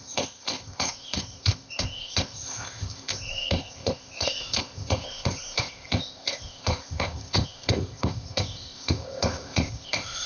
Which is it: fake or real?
fake